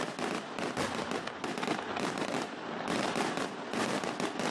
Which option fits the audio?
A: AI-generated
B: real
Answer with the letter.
A